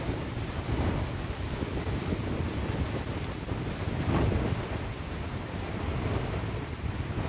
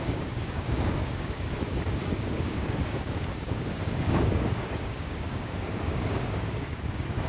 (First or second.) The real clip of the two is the first